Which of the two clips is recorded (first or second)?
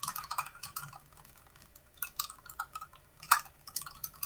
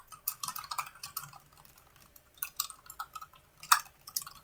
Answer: second